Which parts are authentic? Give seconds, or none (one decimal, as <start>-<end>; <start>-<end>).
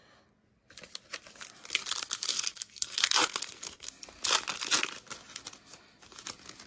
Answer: 0.0-2.3; 3.9-6.7